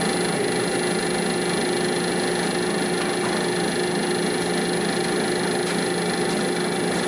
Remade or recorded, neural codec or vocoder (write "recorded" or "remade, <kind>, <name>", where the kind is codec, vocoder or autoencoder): recorded